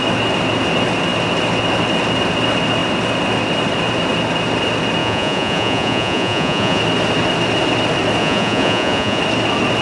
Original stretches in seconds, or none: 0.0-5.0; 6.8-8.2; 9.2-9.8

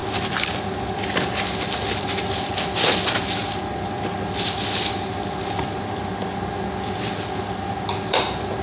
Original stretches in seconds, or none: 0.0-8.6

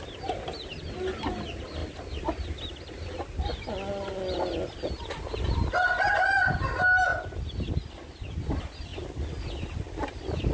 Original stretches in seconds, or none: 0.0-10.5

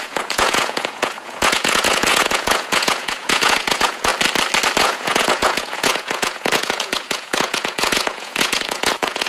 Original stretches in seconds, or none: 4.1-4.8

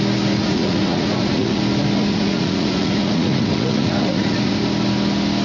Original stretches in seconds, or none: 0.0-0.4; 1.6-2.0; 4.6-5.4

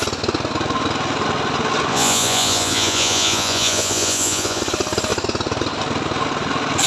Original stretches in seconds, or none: 0.0-1.9; 4.6-6.9